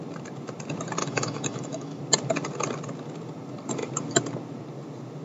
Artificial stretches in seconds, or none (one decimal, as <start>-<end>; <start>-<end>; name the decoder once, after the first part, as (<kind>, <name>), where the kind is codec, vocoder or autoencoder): 1.0-2.0 (autoencoder, DAC-VAE)